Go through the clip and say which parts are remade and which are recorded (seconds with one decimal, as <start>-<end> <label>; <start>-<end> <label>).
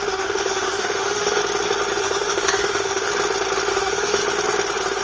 0.0-1.4 remade; 1.4-2.0 recorded; 2.0-3.1 remade; 3.1-3.7 recorded; 3.7-4.2 remade; 4.2-5.0 recorded